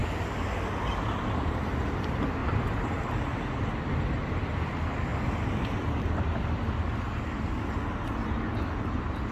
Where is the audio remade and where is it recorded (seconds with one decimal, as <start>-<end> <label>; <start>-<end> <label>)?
0.0-9.3 recorded